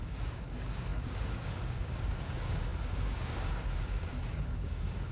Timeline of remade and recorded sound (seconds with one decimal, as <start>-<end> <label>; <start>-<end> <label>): 0.0-5.1 remade